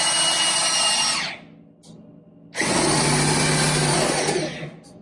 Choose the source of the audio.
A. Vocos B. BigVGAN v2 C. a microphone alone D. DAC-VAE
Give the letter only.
C